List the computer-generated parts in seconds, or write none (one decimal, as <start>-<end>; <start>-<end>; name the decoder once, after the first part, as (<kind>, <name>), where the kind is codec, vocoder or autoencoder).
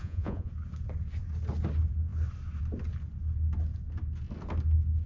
0.0-0.5 (vocoder, Vocos)